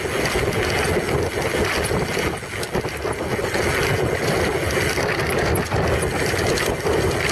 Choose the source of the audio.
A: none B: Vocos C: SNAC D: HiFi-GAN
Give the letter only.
A